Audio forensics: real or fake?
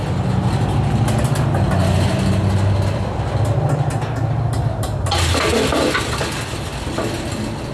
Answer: real